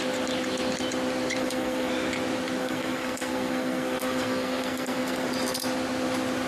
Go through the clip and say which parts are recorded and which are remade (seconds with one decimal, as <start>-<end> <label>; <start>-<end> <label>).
0.0-1.4 recorded; 1.4-1.9 remade; 1.9-2.6 recorded; 2.6-5.3 remade; 5.3-6.5 recorded